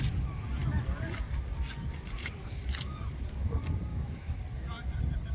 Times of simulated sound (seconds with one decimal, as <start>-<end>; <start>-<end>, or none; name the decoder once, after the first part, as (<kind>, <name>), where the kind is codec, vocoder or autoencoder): 3.9-4.4 (autoencoder, DAC-VAE)